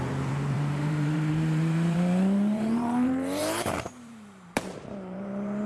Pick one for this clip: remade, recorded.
remade